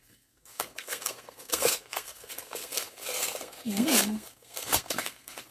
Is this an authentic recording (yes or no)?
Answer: no